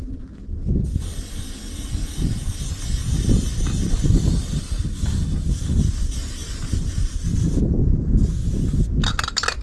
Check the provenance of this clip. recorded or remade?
recorded